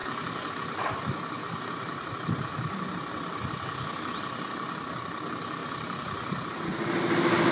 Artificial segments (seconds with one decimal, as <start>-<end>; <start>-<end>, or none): 1.4-2.1; 5.6-6.5